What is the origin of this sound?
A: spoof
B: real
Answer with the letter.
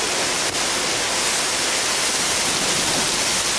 B